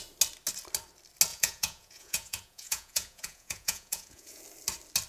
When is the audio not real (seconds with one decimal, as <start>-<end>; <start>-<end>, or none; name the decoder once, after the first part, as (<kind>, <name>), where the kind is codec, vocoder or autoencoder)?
1.3-4.4 (vocoder, Vocos)